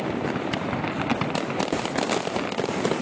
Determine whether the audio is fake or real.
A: real